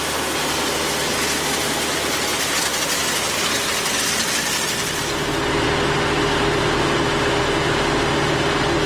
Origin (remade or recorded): recorded